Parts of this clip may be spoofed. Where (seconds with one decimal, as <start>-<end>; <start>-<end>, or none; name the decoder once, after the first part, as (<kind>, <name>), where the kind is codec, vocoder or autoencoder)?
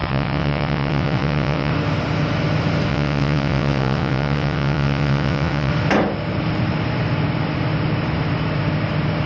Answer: 0.0-1.7 (vocoder, WaveNeXt); 2.9-5.7